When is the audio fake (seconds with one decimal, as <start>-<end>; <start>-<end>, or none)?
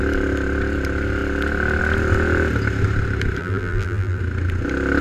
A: 3.4-4.2